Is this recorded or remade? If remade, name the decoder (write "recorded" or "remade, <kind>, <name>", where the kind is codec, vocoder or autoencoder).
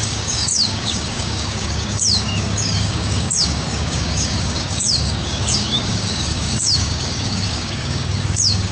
remade, codec, DAC